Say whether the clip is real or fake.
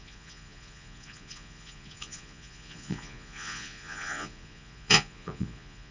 fake